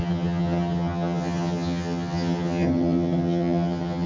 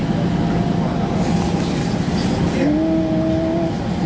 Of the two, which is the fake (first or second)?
first